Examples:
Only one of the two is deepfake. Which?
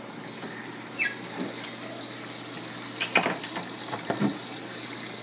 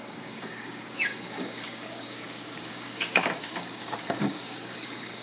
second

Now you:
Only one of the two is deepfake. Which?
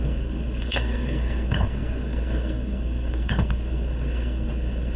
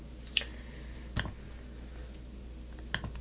first